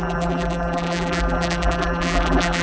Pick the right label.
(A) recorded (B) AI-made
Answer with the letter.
B